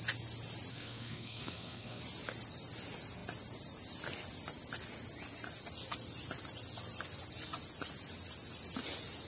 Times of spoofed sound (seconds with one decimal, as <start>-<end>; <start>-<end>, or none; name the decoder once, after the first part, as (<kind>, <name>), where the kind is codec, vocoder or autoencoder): 0.7-2.0 (codec, SNAC)